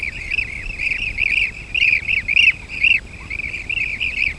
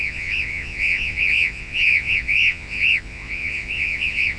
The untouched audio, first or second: first